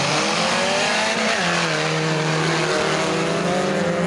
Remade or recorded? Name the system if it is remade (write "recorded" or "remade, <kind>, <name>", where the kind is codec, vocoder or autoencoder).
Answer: recorded